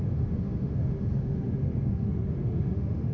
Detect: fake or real fake